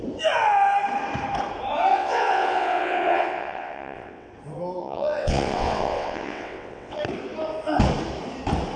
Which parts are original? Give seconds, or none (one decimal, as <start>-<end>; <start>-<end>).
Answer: 0.0-1.9; 4.3-4.8; 7.0-8.8